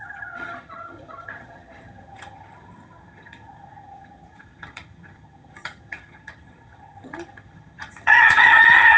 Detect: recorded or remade remade